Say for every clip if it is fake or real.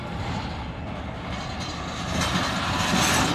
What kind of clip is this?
real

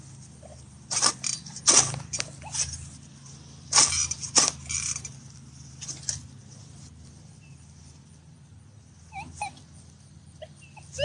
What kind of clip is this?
real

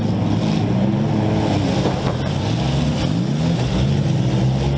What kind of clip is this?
real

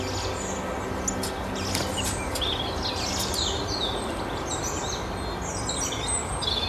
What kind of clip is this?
real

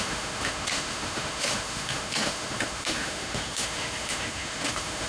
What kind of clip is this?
fake